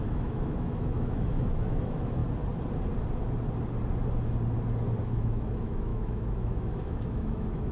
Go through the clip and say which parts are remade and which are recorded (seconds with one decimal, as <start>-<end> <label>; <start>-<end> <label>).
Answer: 0.0-2.2 remade; 2.2-5.0 recorded; 5.0-7.7 remade